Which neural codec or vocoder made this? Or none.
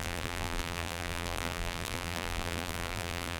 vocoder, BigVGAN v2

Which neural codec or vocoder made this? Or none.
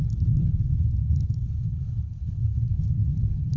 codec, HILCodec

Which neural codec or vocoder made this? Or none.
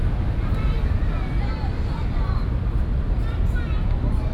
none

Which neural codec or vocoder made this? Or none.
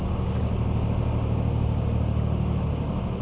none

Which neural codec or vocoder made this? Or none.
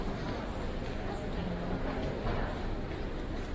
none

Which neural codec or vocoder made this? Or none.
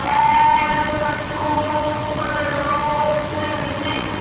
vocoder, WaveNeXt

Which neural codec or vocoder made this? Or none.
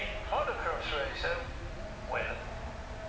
none